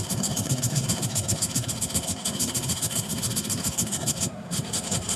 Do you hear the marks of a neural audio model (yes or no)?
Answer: yes